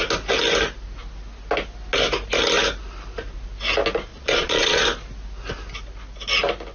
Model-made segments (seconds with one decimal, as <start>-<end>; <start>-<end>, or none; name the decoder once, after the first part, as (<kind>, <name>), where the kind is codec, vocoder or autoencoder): 4.1-4.8 (vocoder, Vocos)